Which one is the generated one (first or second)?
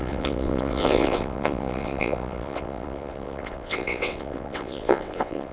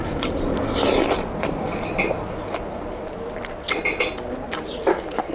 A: first